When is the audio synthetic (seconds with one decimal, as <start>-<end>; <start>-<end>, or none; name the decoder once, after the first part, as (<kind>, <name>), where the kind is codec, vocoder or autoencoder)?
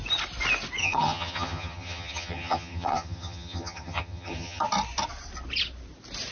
0.8-4.6 (vocoder, HiFi-GAN)